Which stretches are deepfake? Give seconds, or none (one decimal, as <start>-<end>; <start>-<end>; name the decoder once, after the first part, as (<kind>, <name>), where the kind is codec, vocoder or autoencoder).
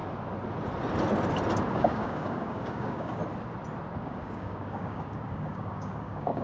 1.7-3.2 (codec, DAC); 4.0-6.4